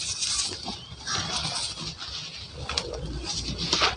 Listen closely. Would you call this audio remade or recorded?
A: recorded